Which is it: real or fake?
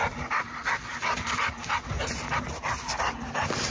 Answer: real